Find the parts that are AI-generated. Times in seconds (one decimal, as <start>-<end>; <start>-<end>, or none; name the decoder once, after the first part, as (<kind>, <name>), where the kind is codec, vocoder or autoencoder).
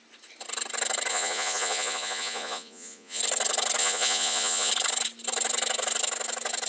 1.1-3.2 (vocoder, Vocos); 3.8-4.7